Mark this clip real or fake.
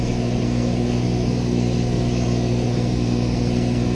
fake